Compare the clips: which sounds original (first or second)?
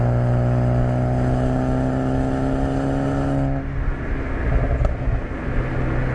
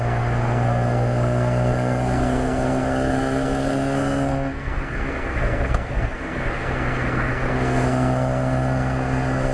first